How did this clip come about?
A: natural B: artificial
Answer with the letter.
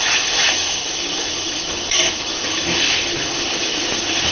B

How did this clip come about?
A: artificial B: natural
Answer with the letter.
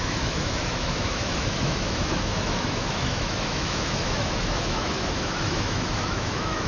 A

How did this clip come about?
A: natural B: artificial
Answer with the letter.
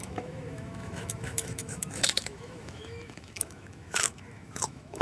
B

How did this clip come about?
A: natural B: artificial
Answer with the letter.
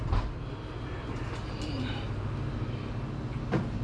A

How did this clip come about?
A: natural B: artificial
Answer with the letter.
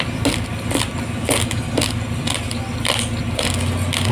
A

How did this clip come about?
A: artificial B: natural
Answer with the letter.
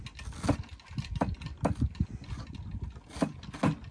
B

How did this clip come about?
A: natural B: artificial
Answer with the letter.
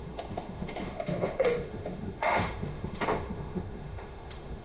B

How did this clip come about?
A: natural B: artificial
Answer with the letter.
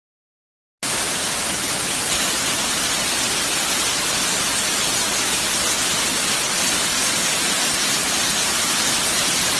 A